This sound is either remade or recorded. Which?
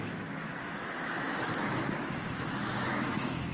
remade